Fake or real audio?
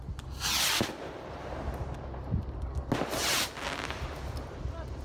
real